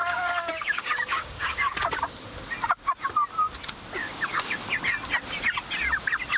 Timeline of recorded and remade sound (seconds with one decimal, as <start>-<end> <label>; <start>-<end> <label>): 0.0-1.8 remade; 1.8-4.0 recorded; 4.0-4.5 remade; 4.5-6.4 recorded